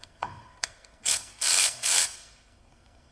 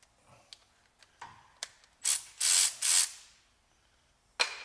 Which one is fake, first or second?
first